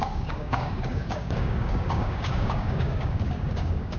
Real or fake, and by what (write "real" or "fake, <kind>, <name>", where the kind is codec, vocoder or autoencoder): fake, codec, DAC